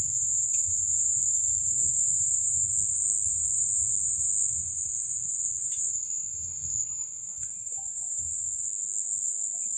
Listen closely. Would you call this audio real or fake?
fake